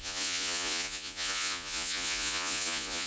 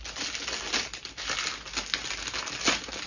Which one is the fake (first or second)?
first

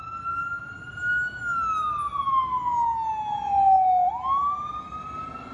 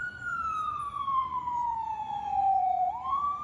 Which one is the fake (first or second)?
second